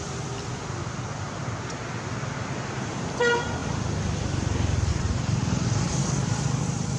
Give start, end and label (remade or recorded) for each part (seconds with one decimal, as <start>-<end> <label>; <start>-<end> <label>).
0.0-0.5 remade; 0.5-1.2 recorded; 1.2-7.0 remade